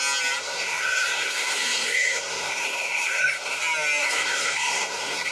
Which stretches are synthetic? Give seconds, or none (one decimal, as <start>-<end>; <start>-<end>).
0.4-3.6; 4.0-5.3